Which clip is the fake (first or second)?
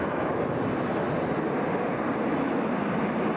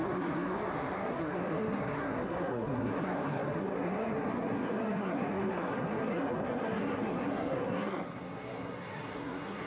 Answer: second